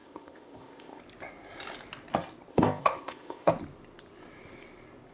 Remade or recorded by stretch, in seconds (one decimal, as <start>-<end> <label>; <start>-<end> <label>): 0.0-1.0 remade; 1.0-2.5 recorded; 2.5-3.5 remade; 3.5-5.1 recorded